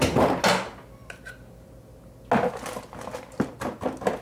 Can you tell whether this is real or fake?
real